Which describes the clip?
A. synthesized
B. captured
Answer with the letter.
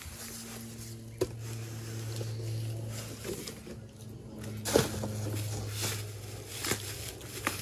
B